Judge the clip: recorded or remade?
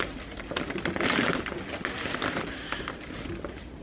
recorded